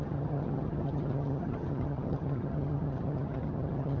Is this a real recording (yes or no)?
no